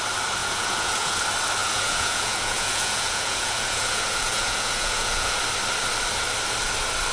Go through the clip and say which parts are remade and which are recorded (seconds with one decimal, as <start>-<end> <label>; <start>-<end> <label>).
0.0-0.4 recorded; 0.4-1.2 remade; 1.2-1.6 recorded; 1.6-5.4 remade; 5.4-7.1 recorded